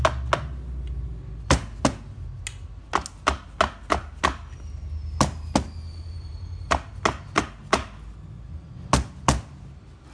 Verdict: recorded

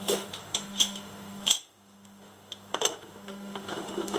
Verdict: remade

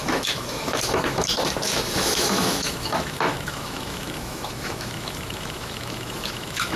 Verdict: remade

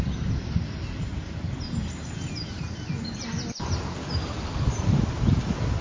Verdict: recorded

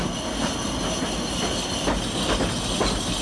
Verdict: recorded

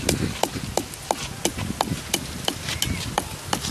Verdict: recorded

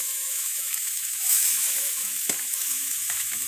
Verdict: remade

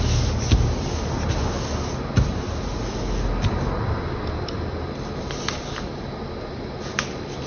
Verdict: recorded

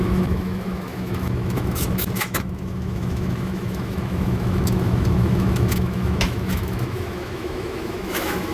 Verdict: remade